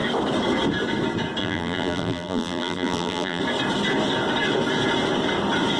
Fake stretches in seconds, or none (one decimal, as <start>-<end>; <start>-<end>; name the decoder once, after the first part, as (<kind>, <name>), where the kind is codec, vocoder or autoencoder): 1.4-3.4 (vocoder, BigVGAN v2)